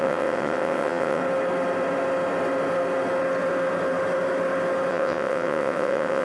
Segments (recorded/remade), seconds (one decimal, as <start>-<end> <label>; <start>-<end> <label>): 0.0-1.2 remade; 1.2-4.9 recorded; 4.9-6.2 remade